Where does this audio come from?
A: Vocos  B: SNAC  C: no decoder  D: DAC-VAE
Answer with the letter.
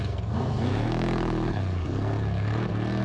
B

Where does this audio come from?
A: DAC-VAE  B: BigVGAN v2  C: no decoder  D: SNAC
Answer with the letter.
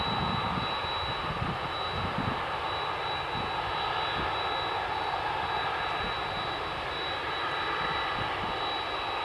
C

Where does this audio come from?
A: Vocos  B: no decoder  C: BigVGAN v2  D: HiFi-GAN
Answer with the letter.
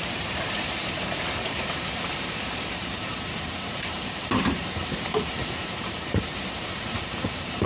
C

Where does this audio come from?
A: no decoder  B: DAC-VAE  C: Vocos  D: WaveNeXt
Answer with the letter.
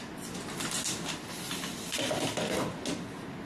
A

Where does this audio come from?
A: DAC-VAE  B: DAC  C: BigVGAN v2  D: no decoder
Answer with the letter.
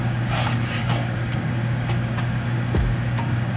B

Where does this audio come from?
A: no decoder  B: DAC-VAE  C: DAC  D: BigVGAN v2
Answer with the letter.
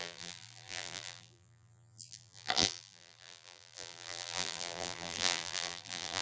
D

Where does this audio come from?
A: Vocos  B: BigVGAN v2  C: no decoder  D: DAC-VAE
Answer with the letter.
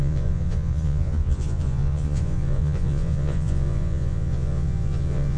A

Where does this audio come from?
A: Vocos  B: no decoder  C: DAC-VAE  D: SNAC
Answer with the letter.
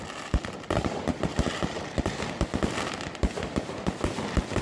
B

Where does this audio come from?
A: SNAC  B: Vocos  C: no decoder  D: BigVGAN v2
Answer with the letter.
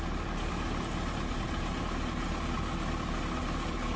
C